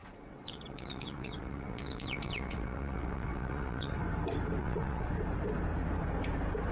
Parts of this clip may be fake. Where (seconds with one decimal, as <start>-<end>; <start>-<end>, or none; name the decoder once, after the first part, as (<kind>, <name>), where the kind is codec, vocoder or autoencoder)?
0.0-4.0 (vocoder, WaveNeXt); 4.6-5.1